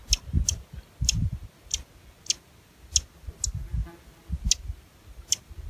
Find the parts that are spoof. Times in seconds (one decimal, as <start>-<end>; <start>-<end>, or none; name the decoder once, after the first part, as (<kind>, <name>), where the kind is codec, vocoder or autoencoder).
none